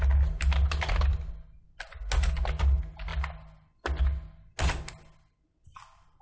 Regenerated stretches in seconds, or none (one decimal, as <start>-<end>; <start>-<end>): none